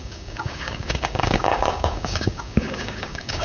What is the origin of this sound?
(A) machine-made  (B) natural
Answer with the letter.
A